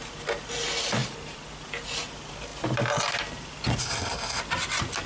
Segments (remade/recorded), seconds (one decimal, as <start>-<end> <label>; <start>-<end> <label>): 0.0-3.8 recorded; 3.8-4.4 remade; 4.4-5.1 recorded